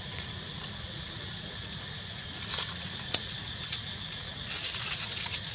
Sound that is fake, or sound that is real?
fake